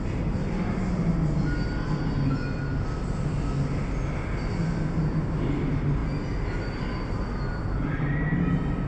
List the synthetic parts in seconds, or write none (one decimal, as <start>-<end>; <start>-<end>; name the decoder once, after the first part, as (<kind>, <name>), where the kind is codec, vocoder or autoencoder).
none